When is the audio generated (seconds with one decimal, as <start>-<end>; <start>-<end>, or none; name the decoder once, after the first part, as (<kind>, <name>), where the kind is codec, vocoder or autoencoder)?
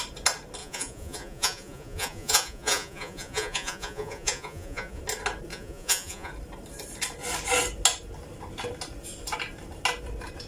0.6-5.0 (vocoder, Vocos); 5.5-6.3